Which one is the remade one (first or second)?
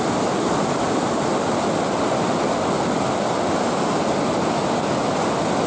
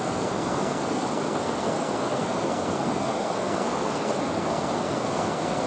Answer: second